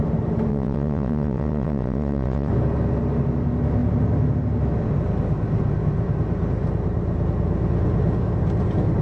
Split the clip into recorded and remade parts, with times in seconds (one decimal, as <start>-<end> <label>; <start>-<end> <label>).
0.0-0.5 recorded; 0.5-2.5 remade; 2.5-9.0 recorded